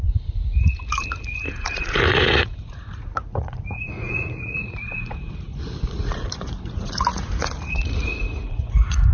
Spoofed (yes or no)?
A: yes